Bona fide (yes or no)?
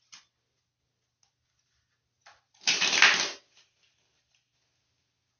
yes